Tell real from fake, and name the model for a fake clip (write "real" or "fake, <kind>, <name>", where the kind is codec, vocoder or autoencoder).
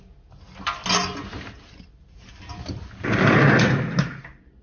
real